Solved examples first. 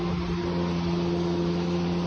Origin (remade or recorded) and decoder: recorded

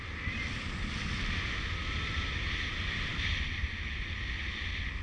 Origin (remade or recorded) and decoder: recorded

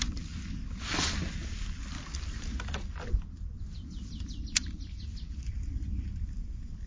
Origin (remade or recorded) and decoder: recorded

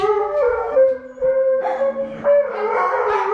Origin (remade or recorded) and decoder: recorded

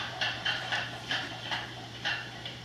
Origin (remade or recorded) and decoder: remade, vocoder, BigVGAN v2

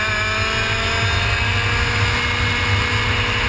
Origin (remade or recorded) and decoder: recorded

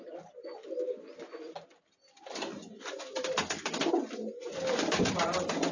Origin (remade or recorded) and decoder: recorded